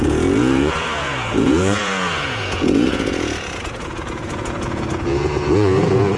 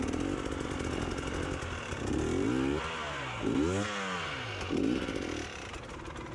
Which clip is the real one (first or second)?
second